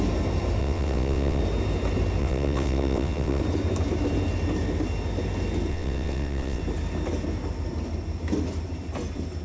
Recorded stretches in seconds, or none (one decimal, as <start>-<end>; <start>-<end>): 0.0-0.6; 1.4-2.2; 3.4-5.7; 6.6-9.4